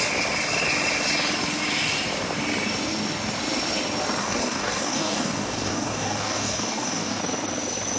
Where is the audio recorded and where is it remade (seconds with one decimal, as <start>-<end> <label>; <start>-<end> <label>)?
0.0-4.2 recorded; 4.2-7.2 remade; 7.2-8.0 recorded